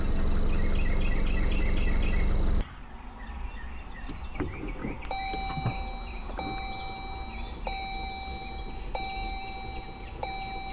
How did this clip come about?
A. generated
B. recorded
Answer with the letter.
B